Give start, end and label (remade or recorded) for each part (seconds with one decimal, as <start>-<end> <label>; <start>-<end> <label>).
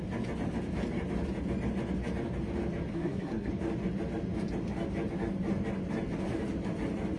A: 0.0-2.9 recorded; 2.9-3.5 remade; 3.5-7.2 recorded